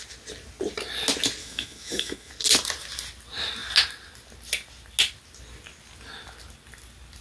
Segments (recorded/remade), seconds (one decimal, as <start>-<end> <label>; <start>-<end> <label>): 0.0-1.4 recorded; 1.4-2.3 remade; 2.3-7.2 recorded

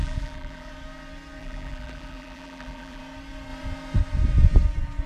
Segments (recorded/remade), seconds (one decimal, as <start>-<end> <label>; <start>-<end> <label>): 0.0-0.7 remade; 0.7-1.4 recorded; 1.4-3.0 remade; 3.0-5.1 recorded

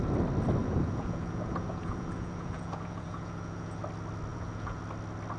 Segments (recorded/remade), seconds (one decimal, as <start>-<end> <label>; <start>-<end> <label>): 0.0-0.6 recorded; 0.6-3.8 remade; 3.8-4.3 recorded; 4.3-4.8 remade; 4.8-5.4 recorded

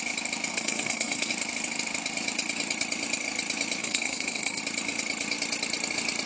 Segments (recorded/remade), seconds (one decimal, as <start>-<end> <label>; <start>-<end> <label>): 0.0-0.5 recorded; 0.5-1.3 remade; 1.3-3.8 recorded; 3.8-4.6 remade; 4.6-6.3 recorded

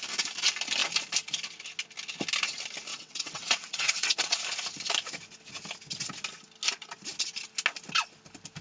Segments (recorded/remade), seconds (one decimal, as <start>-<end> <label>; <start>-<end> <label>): 0.0-2.9 recorded; 2.9-4.4 remade; 4.4-8.6 recorded

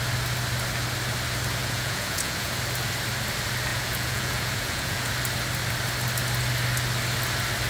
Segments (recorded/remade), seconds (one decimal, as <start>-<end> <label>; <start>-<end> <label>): 0.0-1.6 recorded; 1.6-2.5 remade; 2.5-3.7 recorded; 3.7-5.1 remade; 5.1-7.7 recorded

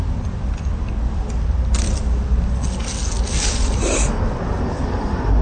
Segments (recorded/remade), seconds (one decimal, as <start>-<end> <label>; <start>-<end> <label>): 0.0-5.4 recorded